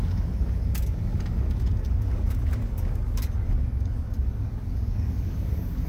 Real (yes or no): no